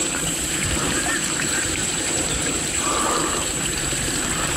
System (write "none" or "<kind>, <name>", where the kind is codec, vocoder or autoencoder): vocoder, BigVGAN v2